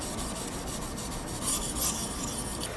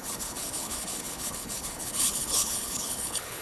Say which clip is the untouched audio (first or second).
first